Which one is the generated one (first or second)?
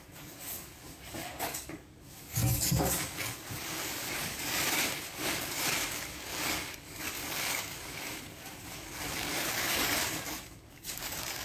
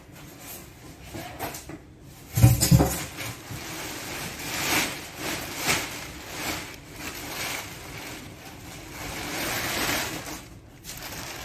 first